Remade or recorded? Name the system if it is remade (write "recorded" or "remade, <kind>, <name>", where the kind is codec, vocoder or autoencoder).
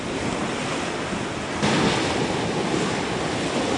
recorded